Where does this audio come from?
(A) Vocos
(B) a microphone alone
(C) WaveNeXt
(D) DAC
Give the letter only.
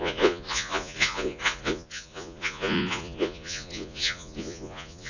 A